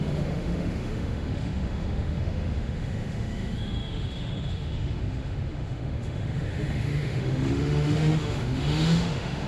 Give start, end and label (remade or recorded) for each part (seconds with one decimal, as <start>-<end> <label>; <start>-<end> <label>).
0.0-9.5 remade